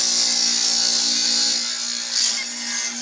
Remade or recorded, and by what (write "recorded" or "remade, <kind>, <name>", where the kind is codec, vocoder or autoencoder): recorded